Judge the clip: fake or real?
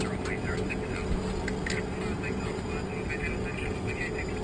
real